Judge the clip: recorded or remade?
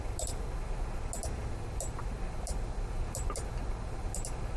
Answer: recorded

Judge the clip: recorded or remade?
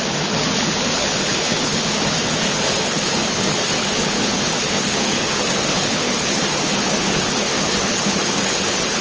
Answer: remade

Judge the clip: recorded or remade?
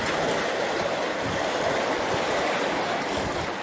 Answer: recorded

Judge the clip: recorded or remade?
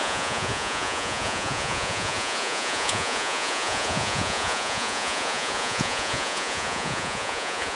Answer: remade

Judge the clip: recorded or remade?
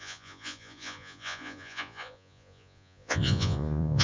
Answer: remade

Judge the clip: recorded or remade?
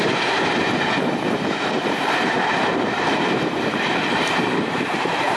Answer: remade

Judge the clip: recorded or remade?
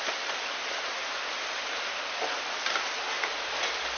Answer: recorded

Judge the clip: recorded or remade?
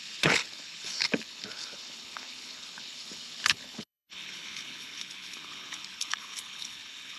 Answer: remade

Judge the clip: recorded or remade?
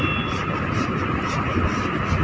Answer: recorded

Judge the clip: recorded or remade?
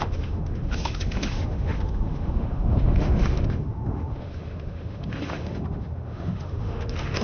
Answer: remade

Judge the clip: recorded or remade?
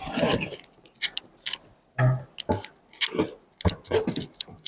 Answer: recorded